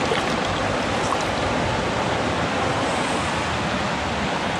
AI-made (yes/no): no